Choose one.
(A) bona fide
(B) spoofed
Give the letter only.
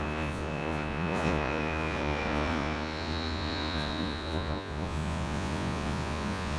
B